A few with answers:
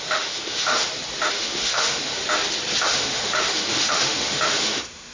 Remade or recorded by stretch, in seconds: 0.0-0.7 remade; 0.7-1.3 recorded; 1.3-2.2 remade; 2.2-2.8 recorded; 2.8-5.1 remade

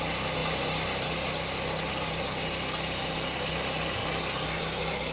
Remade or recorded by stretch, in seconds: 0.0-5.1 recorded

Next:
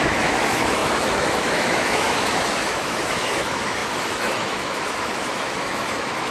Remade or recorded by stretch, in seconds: 0.0-6.3 remade